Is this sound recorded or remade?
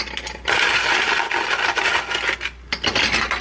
recorded